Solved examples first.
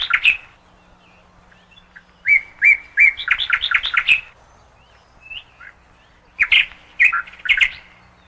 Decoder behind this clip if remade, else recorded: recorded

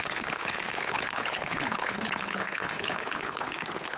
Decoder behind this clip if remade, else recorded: remade, codec, HILCodec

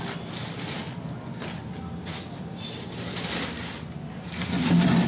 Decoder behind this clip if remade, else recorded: recorded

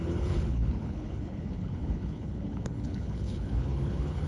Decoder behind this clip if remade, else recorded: remade, codec, HILCodec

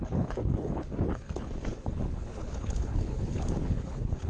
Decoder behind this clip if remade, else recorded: remade, codec, HILCodec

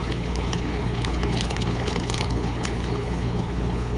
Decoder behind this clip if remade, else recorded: remade, codec, HILCodec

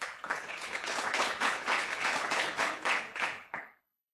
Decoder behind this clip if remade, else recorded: remade, codec, HILCodec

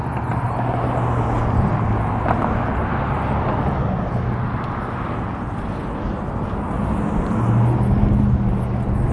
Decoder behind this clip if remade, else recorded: recorded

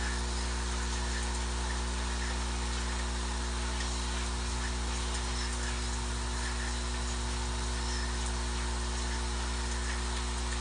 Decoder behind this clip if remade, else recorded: recorded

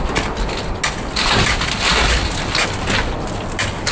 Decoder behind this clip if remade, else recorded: recorded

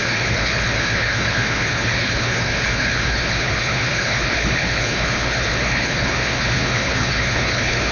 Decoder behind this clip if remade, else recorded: remade, codec, HILCodec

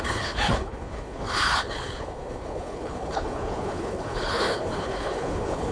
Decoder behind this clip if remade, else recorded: remade, codec, HILCodec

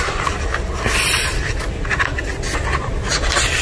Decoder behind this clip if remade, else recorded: recorded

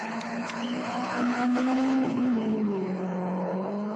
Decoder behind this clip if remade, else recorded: remade, codec, HILCodec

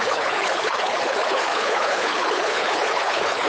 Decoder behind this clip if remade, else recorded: remade, codec, HILCodec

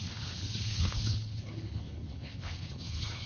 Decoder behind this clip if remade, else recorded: remade, codec, HILCodec